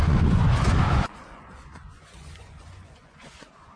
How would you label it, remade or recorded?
remade